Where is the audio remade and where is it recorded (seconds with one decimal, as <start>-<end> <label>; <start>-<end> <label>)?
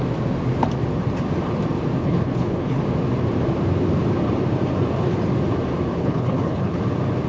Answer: 0.0-2.0 recorded; 2.0-2.8 remade; 2.8-6.0 recorded; 6.0-6.8 remade; 6.8-7.3 recorded